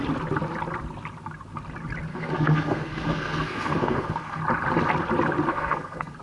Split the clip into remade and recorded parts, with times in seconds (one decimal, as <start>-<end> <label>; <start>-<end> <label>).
0.0-2.1 recorded; 2.1-4.4 remade; 4.4-5.5 recorded; 5.5-6.2 remade